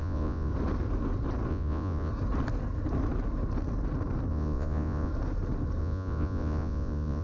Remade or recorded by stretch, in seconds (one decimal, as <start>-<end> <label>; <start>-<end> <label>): 0.0-0.5 remade; 0.5-1.5 recorded; 1.5-2.1 remade; 2.1-4.3 recorded; 4.3-5.1 remade; 5.1-5.8 recorded; 5.8-7.2 remade